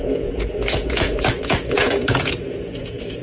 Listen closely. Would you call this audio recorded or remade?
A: remade